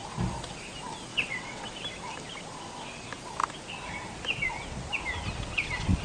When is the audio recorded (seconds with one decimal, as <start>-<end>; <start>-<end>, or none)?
0.0-1.1; 1.7-6.0

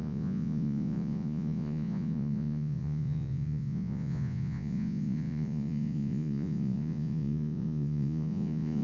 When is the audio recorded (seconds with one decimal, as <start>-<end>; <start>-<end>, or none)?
none

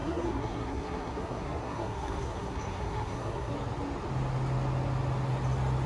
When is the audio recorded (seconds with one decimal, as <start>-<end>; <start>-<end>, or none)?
3.5-5.9